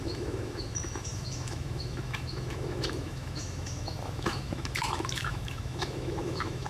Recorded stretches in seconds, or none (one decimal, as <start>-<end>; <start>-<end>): none